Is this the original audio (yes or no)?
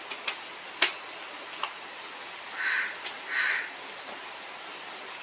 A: yes